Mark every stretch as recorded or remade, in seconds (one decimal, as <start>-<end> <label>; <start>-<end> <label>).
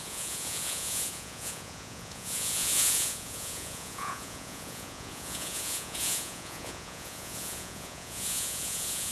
0.0-9.1 remade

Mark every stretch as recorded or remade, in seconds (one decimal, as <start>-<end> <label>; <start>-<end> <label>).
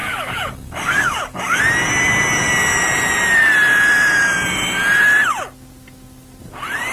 0.0-1.6 remade; 1.6-6.9 recorded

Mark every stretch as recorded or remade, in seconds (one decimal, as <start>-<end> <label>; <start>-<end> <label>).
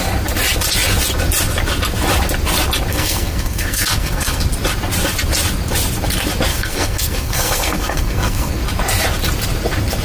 0.0-2.9 recorded; 2.9-4.4 remade; 4.4-6.5 recorded; 6.5-8.6 remade; 8.6-10.0 recorded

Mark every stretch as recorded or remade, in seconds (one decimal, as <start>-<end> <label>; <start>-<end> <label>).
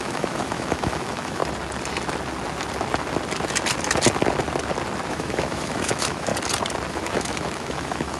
0.0-1.4 remade; 1.4-5.1 recorded; 5.1-6.3 remade; 6.3-6.9 recorded; 6.9-8.2 remade